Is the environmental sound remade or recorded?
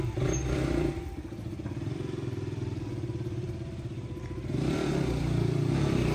remade